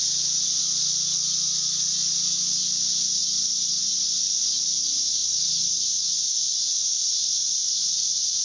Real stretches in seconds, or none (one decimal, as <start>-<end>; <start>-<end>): none